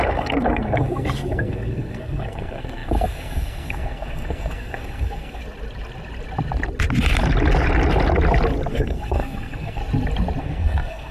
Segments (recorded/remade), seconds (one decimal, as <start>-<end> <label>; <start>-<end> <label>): 0.0-5.4 remade; 5.4-8.7 recorded; 8.7-9.8 remade; 9.8-10.4 recorded; 10.4-11.1 remade